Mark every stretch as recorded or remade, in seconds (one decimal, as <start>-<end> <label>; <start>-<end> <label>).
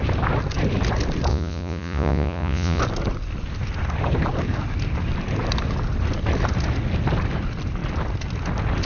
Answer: 0.0-1.3 recorded; 1.3-2.8 remade; 2.8-8.8 recorded